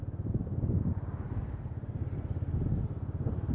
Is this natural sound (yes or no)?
yes